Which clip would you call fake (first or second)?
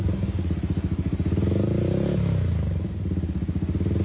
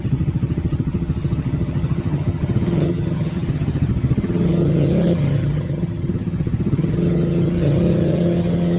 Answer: second